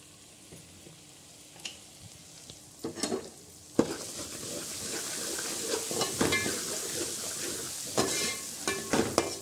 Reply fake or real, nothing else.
real